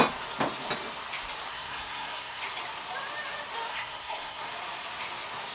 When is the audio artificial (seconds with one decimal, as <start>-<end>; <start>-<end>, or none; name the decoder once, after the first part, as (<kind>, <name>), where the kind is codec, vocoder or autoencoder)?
1.5-2.4 (codec, SNAC); 3.7-4.5